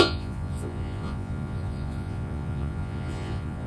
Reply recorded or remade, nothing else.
remade